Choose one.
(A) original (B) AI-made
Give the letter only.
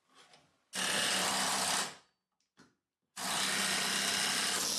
A